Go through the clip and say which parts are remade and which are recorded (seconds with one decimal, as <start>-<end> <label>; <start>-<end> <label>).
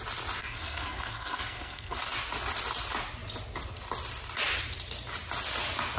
0.0-0.4 recorded; 0.4-2.0 remade; 2.0-6.0 recorded